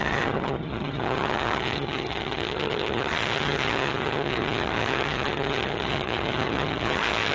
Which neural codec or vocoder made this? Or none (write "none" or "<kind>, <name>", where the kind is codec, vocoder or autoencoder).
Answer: vocoder, HiFi-GAN